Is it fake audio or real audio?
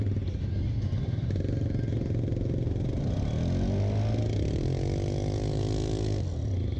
real